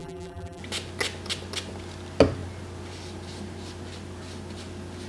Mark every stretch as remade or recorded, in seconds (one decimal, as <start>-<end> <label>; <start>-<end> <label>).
0.0-0.6 remade; 0.6-5.1 recorded

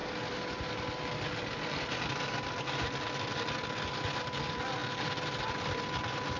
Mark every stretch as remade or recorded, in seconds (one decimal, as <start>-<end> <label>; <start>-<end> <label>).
0.0-6.4 recorded